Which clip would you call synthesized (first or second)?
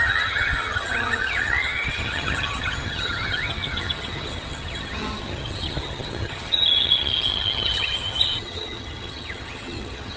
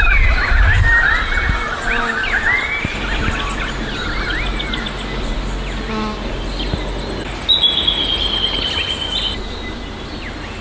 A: first